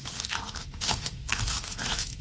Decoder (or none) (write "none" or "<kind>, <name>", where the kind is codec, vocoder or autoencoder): autoencoder, DAC-VAE